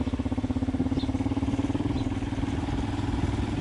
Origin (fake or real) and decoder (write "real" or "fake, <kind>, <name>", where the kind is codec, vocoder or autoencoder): real